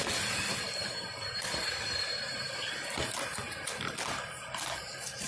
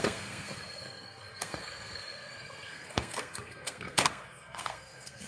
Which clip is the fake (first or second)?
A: second